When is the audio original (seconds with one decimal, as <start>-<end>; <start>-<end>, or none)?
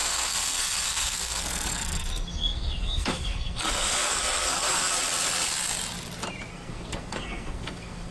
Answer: 4.8-6.5